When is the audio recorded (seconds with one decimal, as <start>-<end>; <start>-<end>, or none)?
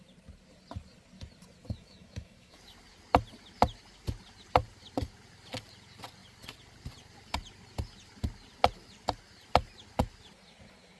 0.0-1.6; 2.6-11.0